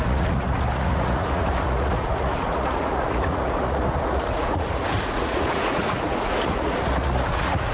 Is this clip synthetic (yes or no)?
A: yes